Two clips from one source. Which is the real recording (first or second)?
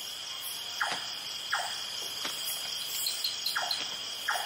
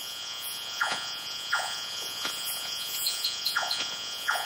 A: first